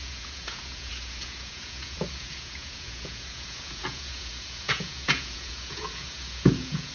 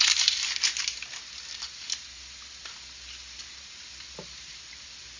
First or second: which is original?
second